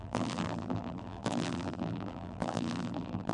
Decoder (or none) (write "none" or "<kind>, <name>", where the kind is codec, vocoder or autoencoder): vocoder, BigVGAN v2